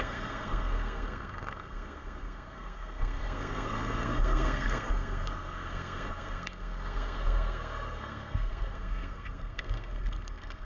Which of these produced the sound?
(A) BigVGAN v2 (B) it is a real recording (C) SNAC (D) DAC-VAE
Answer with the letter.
C